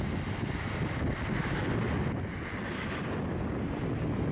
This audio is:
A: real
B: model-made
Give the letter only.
A